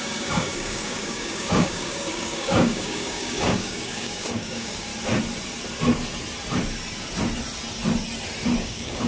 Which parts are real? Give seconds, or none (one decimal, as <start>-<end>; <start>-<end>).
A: 4.9-8.6